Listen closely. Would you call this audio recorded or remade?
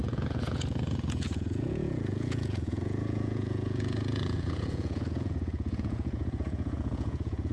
remade